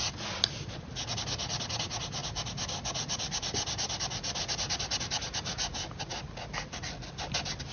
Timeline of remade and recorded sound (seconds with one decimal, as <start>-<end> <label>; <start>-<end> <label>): 0.0-7.7 recorded

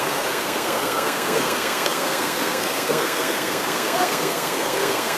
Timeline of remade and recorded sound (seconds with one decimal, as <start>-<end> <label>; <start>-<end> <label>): 0.0-5.2 remade

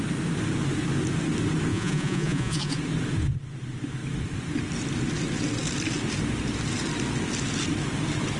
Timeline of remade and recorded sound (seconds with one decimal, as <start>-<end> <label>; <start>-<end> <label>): 0.0-1.7 recorded; 1.7-2.8 remade; 2.8-8.4 recorded

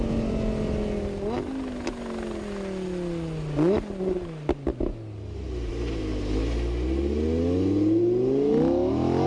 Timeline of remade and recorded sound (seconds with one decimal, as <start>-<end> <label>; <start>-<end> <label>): 0.0-9.3 recorded

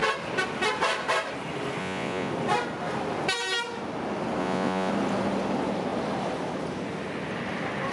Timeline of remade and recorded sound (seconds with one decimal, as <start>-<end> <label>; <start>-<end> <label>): 0.0-1.8 recorded; 1.8-2.3 remade; 2.3-4.4 recorded; 4.4-4.9 remade; 4.9-7.9 recorded